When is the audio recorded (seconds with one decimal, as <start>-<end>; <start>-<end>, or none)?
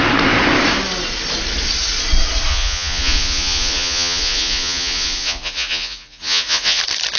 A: 0.0-2.5; 6.8-7.2